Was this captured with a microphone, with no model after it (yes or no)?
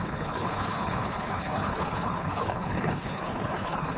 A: no